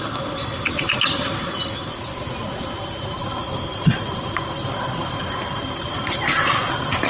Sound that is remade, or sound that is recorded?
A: remade